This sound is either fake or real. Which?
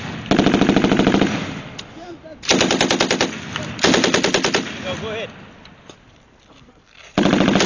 real